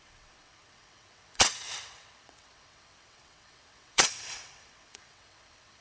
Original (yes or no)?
no